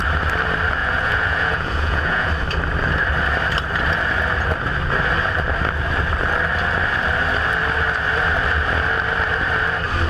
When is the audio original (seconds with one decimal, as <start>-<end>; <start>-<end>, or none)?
0.0-0.8; 2.3-10.1